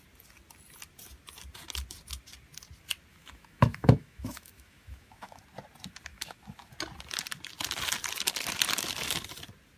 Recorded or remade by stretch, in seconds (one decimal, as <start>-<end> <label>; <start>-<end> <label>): 0.0-3.1 recorded; 3.1-5.4 remade; 5.4-6.1 recorded; 6.1-6.7 remade; 6.7-9.8 recorded